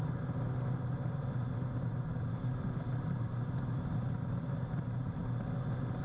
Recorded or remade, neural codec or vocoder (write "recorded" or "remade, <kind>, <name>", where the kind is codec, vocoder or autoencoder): recorded